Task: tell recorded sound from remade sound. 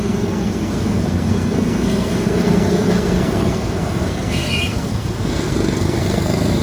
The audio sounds remade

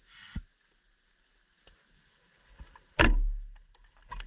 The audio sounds recorded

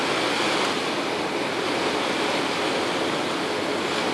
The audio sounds recorded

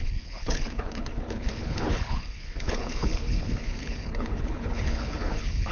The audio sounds remade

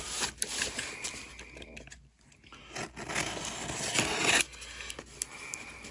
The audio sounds recorded